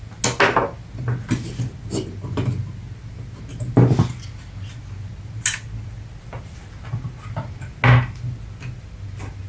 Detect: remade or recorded recorded